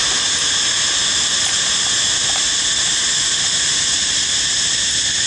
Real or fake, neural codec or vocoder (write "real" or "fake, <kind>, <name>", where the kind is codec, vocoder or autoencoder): real